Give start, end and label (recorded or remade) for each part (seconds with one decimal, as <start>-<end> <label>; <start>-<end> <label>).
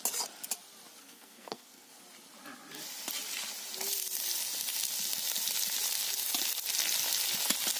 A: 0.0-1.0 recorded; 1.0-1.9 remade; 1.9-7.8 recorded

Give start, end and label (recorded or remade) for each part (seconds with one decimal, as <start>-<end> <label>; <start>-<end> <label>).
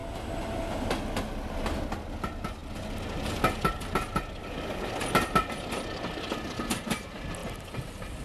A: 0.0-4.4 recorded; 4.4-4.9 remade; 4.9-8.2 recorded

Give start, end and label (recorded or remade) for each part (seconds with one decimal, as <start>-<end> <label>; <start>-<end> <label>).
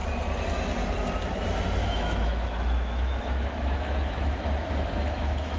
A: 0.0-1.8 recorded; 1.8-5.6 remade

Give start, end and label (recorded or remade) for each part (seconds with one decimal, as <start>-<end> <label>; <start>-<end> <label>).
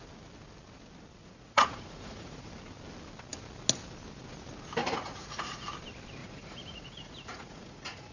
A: 0.0-1.2 recorded; 1.2-2.5 remade; 2.5-4.8 recorded; 4.8-5.6 remade; 5.6-6.2 recorded; 6.2-8.1 remade